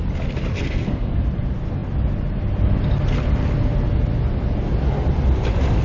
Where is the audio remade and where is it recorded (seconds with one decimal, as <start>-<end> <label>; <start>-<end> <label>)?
0.0-0.5 recorded; 0.5-1.1 remade; 1.1-5.8 recorded